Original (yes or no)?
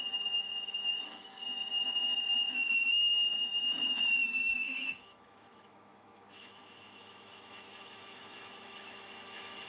no